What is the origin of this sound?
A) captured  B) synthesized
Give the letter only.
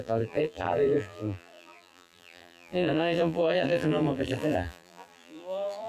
B